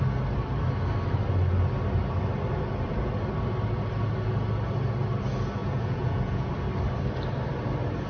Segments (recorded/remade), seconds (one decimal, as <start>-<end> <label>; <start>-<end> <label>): 0.0-5.6 recorded; 5.6-6.5 remade; 6.5-8.1 recorded